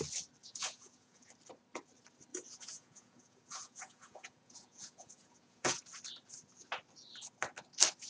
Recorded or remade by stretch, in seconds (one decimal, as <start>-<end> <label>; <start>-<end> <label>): 0.0-0.4 recorded; 0.4-1.3 remade; 1.3-2.3 recorded; 2.3-5.8 remade; 5.8-8.1 recorded